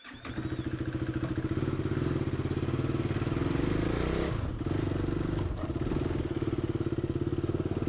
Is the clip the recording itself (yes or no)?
yes